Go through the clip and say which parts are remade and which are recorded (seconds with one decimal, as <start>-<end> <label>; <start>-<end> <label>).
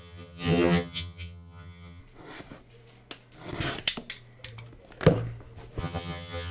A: 0.0-2.0 remade; 2.0-5.8 recorded; 5.8-6.5 remade